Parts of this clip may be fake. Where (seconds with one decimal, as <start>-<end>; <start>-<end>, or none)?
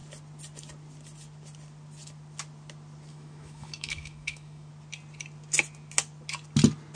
3.1-4.7